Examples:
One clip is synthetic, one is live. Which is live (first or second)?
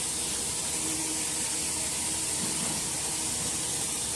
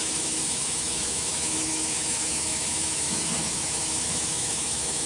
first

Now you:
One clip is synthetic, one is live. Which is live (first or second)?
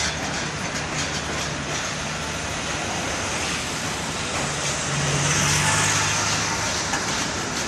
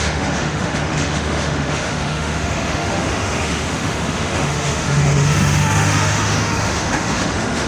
first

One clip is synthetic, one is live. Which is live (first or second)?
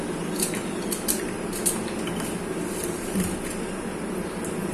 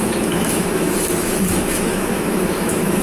first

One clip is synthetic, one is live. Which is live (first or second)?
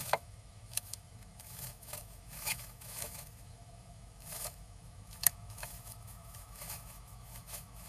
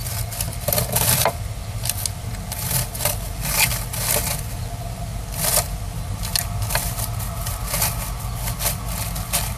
second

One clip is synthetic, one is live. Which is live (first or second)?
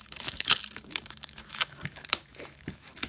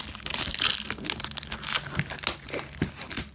second